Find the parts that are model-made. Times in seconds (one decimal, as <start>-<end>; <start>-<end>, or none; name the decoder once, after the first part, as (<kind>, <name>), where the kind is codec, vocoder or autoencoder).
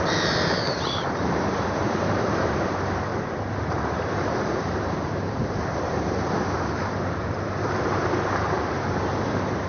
0.0-3.1 (vocoder, BigVGAN v2); 3.6-9.7